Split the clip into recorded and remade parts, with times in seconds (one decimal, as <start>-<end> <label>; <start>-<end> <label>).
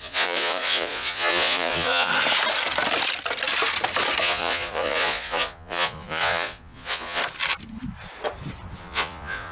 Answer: 0.0-2.1 remade; 2.1-4.2 recorded; 4.2-7.2 remade; 7.2-8.8 recorded; 8.8-9.5 remade